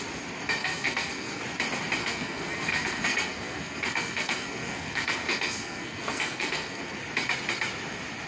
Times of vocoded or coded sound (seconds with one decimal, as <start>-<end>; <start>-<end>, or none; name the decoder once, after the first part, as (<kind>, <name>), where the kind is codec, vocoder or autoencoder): 0.6-1.4 (codec, SNAC); 2.0-7.0